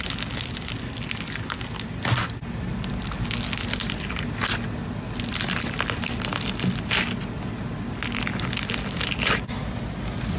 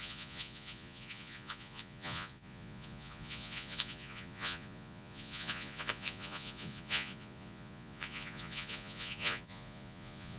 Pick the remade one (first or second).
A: second